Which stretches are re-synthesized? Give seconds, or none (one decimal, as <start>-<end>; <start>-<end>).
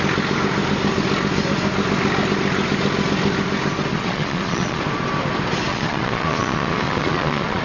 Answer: 3.9-4.8; 5.7-7.6